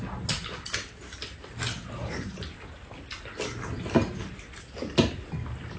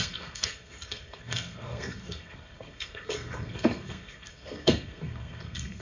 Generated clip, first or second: second